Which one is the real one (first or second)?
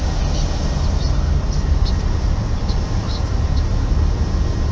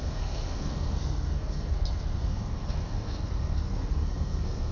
first